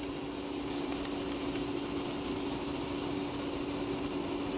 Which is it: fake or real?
real